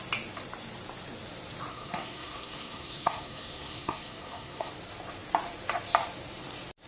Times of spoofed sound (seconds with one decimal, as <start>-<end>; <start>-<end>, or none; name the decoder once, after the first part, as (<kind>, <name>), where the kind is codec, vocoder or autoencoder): 1.7-4.7 (codec, SNAC)